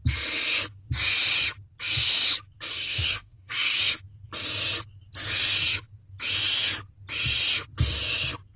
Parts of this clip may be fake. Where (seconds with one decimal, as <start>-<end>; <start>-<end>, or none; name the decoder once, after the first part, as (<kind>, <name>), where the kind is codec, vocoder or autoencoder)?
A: 2.7-3.8 (codec, SNAC)